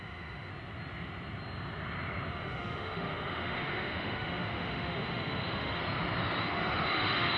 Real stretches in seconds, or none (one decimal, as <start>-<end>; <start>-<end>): 0.5-2.3; 5.8-6.4